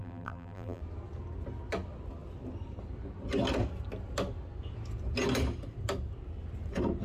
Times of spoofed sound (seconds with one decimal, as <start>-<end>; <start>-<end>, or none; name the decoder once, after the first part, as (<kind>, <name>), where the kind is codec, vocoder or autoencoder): 0.0-0.8 (vocoder, BigVGAN v2)